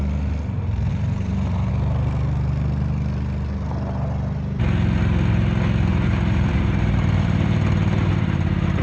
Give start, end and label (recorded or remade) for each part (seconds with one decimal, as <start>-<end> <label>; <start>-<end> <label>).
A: 0.0-0.9 recorded; 0.9-1.7 remade; 1.7-5.9 recorded; 5.9-8.1 remade; 8.1-8.8 recorded